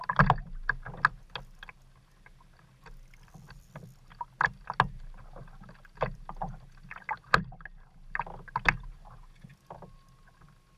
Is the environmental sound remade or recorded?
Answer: recorded